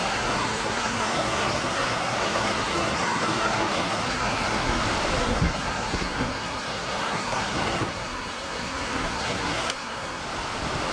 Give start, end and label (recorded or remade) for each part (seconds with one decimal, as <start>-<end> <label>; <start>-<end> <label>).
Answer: 0.0-4.8 remade; 4.8-5.2 recorded; 5.2-10.2 remade; 10.2-10.9 recorded